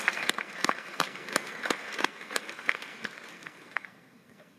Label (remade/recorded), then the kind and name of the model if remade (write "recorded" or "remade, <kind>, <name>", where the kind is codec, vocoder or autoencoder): remade, codec, SNAC